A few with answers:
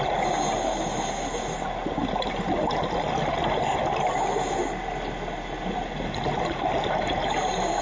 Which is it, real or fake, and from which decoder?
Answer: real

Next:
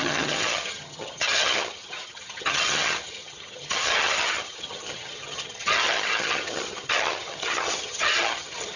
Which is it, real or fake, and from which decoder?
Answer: fake, vocoder, HiFi-GAN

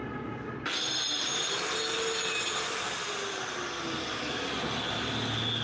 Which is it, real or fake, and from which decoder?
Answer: real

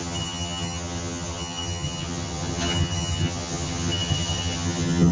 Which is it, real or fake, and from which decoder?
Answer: fake, vocoder, HiFi-GAN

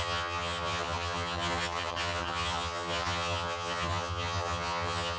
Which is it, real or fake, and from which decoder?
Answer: fake, vocoder, HiFi-GAN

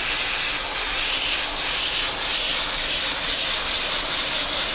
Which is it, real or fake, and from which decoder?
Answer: real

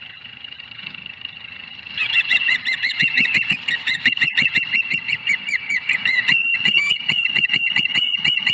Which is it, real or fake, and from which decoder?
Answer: fake, vocoder, HiFi-GAN